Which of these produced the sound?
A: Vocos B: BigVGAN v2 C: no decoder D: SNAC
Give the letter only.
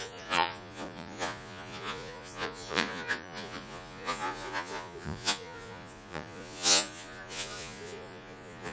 A